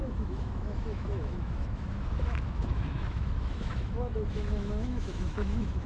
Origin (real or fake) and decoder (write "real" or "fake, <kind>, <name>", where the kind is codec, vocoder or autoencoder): fake, autoencoder, DAC-VAE